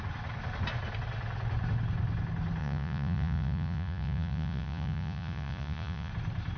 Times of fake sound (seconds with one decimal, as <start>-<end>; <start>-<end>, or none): 2.6-6.1